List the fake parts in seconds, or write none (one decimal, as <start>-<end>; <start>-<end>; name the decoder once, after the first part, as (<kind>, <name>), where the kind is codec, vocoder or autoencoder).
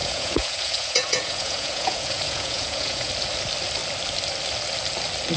0.0-3.1 (vocoder, Vocos)